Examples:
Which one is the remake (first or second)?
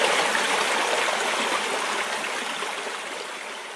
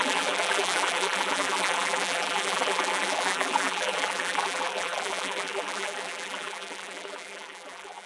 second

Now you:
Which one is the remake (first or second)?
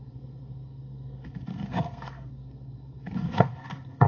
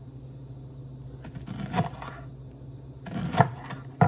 first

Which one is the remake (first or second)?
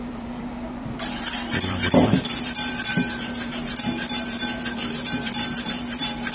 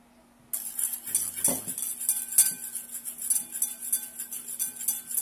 first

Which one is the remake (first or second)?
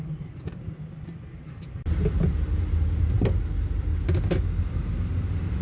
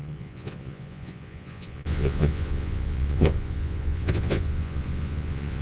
second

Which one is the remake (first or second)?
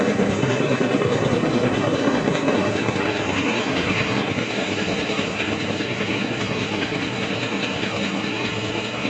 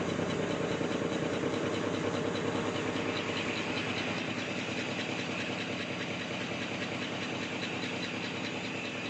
first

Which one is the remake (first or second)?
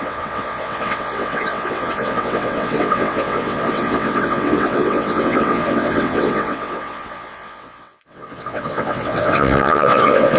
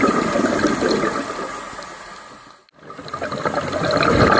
first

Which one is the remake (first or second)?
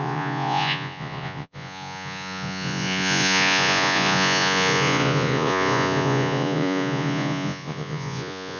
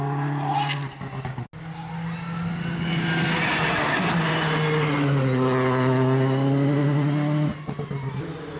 first